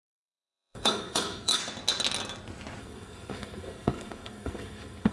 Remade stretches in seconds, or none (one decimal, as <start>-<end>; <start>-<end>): 0.0-1.6; 2.8-5.1